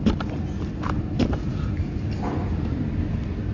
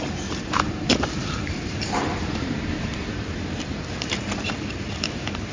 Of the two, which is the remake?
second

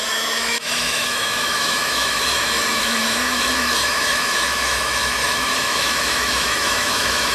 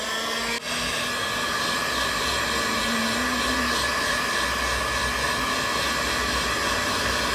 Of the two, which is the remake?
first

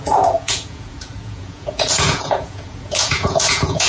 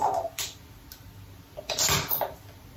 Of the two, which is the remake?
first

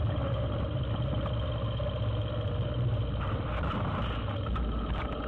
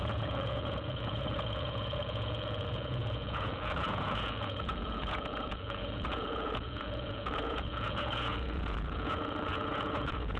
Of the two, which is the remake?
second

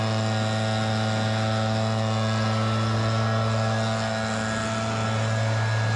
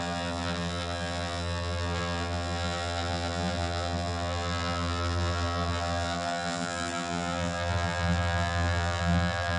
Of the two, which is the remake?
second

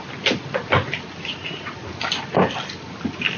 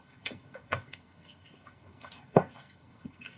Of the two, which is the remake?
second